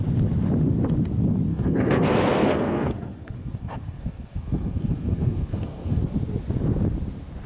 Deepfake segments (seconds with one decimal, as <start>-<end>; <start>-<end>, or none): 1.5-6.0